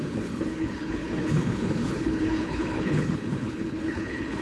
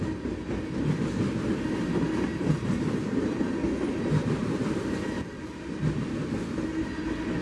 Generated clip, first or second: first